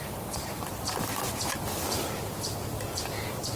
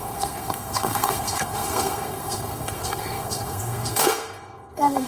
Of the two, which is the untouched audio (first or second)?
first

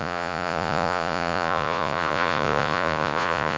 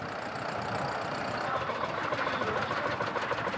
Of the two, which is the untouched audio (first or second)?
second